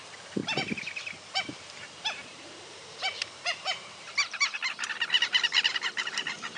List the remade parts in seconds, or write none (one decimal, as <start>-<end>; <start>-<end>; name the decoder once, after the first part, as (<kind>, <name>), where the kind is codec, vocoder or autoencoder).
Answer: 0.0-0.4 (vocoder, BigVGAN v2); 1.3-4.6; 5.7-6.6